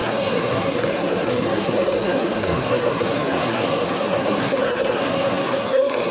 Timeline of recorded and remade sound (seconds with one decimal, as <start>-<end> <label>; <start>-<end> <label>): 0.0-6.1 remade